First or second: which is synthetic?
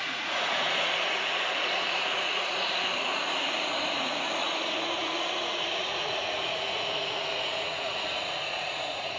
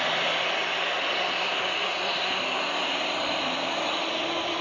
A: first